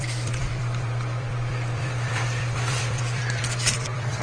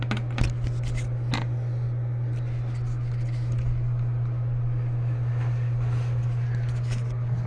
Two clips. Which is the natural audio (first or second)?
second